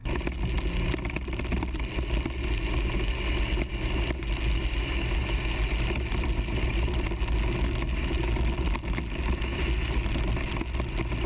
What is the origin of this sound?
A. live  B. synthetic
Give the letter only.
A